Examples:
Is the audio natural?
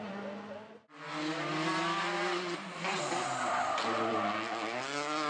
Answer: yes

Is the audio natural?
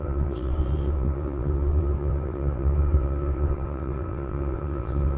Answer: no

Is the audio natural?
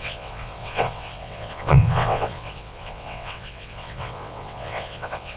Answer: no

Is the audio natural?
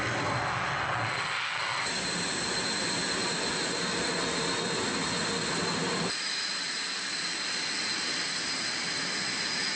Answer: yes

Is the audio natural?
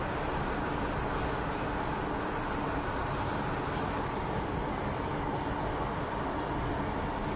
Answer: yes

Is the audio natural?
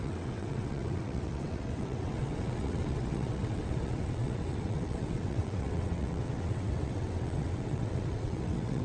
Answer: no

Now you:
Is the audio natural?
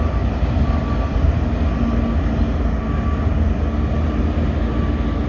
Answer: yes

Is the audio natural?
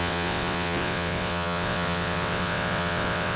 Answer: no